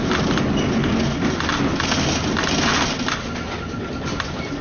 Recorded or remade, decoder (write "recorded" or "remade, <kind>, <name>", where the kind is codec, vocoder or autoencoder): recorded